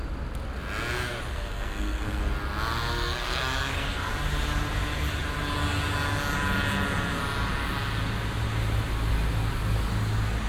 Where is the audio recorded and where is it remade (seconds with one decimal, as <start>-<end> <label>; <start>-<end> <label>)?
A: 0.0-1.3 recorded; 1.3-2.2 remade; 2.2-2.9 recorded; 2.9-4.1 remade; 4.1-10.5 recorded